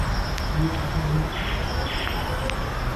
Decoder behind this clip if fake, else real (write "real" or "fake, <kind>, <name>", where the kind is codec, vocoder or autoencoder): real